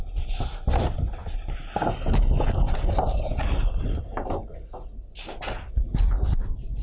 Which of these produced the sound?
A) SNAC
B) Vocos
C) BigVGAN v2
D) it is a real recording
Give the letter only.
D